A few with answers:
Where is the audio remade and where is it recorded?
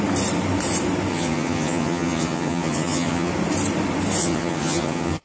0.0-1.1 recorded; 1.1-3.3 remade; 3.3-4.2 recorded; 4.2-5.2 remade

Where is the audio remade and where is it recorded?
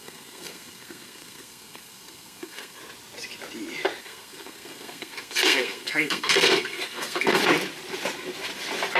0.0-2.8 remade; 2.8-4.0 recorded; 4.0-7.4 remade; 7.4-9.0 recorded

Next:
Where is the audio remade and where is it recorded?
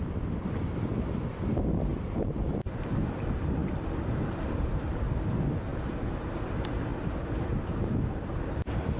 0.0-1.9 recorded; 1.9-2.5 remade; 2.5-9.0 recorded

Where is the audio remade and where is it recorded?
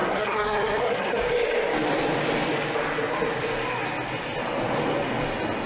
0.0-1.2 remade; 1.2-5.7 recorded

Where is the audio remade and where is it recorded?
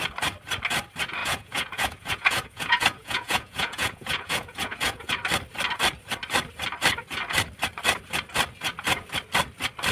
0.0-1.2 recorded; 1.2-5.1 remade; 5.1-9.9 recorded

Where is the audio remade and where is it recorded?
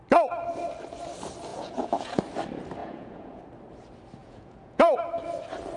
0.0-1.5 recorded; 1.5-2.2 remade; 2.2-2.8 recorded; 2.8-3.4 remade; 3.4-4.2 recorded; 4.2-5.0 remade; 5.0-5.8 recorded